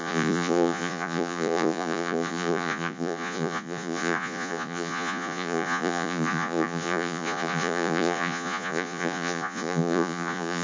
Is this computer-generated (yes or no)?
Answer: yes